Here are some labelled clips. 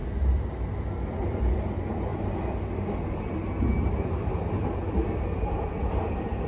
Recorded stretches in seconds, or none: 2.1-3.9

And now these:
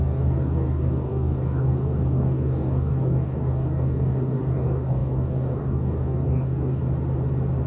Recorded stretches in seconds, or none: 6.8-7.7

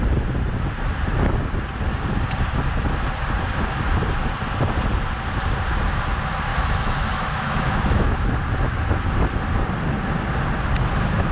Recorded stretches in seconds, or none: 0.0-6.5; 8.1-11.3

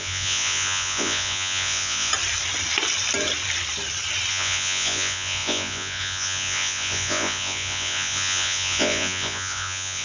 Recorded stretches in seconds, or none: 2.1-4.3